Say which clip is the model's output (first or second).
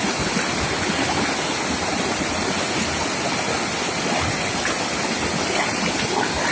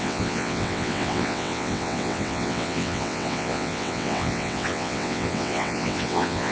second